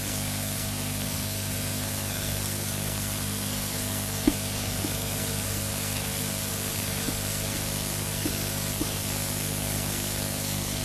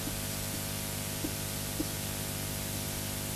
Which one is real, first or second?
second